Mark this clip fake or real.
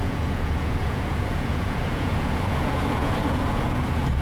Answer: fake